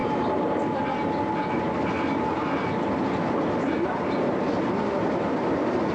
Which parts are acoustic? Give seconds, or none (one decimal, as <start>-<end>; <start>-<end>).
0.6-5.9